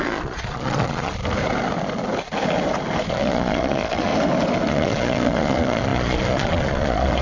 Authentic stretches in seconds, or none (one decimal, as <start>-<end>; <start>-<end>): 1.2-3.1; 4.1-4.7